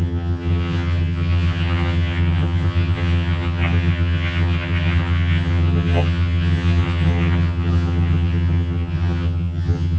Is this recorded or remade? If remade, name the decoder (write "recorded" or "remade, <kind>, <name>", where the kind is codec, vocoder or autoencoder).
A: remade, vocoder, HiFi-GAN